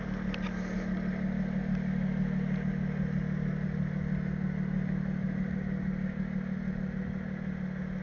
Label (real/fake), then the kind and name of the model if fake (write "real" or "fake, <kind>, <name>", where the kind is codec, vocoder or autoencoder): real